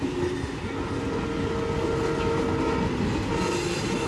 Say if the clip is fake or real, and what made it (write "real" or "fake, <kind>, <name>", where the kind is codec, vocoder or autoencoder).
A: real